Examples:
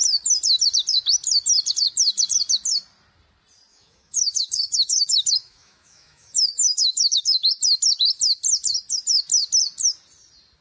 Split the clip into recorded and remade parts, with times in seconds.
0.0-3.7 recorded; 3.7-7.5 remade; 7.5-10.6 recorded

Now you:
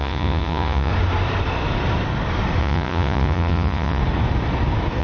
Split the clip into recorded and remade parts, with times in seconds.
0.0-0.9 remade; 0.9-2.6 recorded; 2.6-4.0 remade; 4.0-5.0 recorded